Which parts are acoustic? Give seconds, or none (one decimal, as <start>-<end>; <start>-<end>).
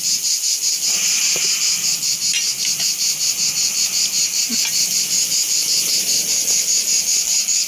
0.0-7.7